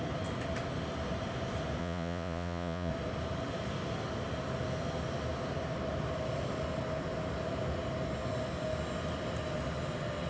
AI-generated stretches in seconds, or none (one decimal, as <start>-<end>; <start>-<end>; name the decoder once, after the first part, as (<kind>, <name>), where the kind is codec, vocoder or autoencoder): 1.8-2.9 (vocoder, Vocos)